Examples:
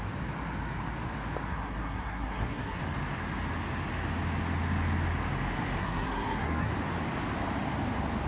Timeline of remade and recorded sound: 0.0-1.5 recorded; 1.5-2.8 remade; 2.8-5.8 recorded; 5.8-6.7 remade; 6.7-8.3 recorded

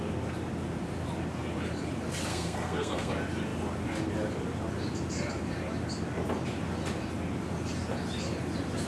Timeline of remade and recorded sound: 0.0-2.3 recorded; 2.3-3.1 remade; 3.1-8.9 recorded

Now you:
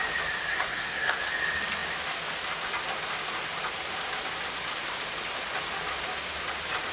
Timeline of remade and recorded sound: 0.0-0.5 recorded; 0.5-1.2 remade; 1.2-6.9 recorded